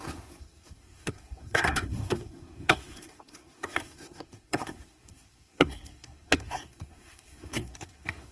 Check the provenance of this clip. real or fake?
fake